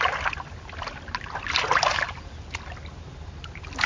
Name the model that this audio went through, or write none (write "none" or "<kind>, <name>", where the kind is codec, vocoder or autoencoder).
none